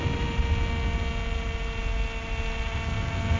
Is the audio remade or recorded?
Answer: recorded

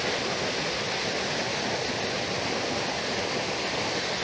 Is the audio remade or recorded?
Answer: recorded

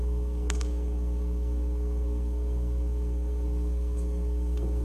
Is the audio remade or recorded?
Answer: remade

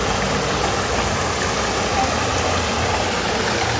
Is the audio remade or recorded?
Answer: recorded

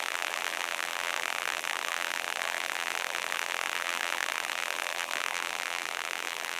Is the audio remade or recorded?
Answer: remade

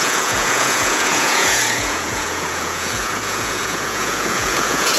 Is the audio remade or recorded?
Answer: remade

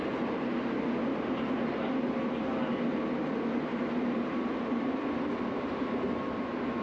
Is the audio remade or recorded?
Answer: recorded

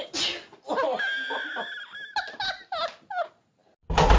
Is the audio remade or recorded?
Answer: recorded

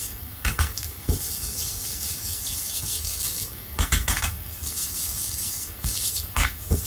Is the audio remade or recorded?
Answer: remade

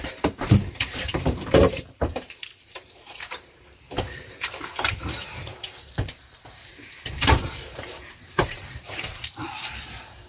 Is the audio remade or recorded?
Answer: remade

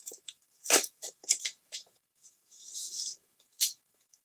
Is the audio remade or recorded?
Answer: remade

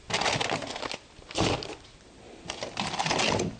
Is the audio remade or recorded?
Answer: recorded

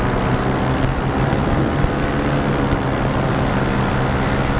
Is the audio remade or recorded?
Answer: recorded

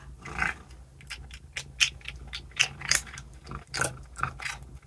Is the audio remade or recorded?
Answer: recorded